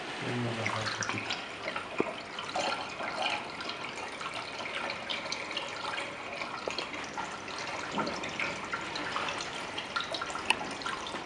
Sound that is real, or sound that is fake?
real